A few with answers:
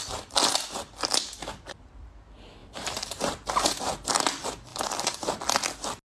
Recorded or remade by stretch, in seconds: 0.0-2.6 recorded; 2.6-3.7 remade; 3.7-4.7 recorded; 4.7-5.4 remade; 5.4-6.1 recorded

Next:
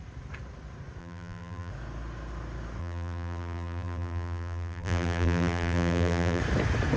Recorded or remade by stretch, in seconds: 0.0-1.0 recorded; 1.0-1.7 remade; 1.7-2.8 recorded; 2.8-6.4 remade; 6.4-7.0 recorded

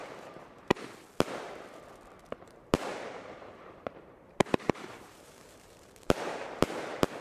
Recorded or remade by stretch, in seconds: 0.0-0.8 remade; 0.8-2.9 recorded; 2.9-6.5 remade; 6.5-7.2 recorded

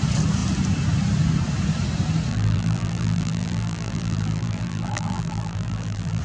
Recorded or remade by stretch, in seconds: 0.0-2.3 recorded; 2.3-6.2 remade